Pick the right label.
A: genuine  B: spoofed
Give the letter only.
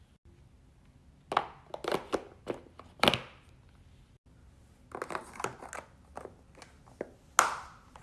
A